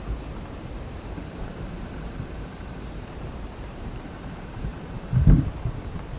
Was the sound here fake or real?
fake